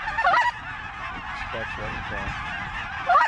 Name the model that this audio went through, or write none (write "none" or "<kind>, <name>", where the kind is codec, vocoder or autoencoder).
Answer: none